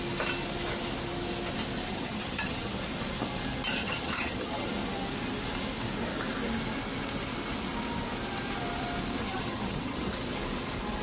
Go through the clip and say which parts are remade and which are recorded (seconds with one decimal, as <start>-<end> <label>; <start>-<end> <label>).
0.0-1.9 recorded; 1.9-2.8 remade; 2.8-3.8 recorded; 3.8-4.7 remade; 4.7-9.2 recorded; 9.2-10.1 remade; 10.1-11.0 recorded